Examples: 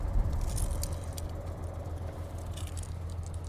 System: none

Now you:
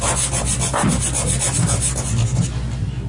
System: none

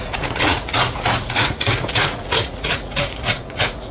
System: vocoder, Vocos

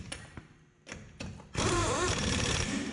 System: vocoder, BigVGAN v2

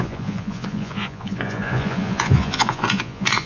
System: vocoder, Vocos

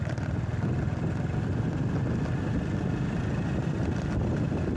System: none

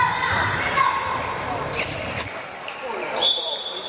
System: vocoder, BigVGAN v2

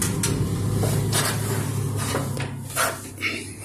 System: none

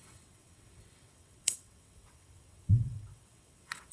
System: vocoder, WaveNeXt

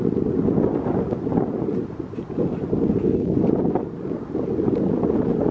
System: none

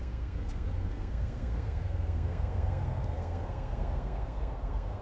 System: codec, SNAC